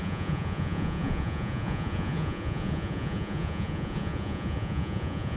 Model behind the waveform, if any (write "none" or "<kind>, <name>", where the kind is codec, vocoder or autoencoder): vocoder, Vocos